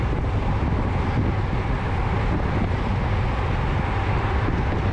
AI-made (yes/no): no